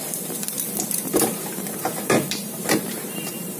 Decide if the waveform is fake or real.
fake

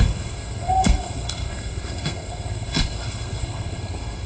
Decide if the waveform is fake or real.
fake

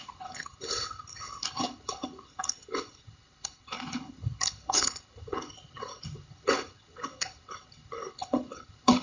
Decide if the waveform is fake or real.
fake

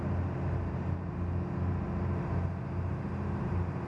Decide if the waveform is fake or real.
real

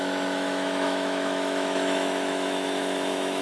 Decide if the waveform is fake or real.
fake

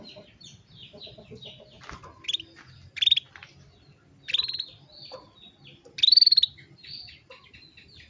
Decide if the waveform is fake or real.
real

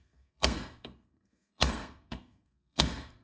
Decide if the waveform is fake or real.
fake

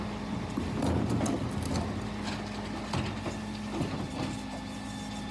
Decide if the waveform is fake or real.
real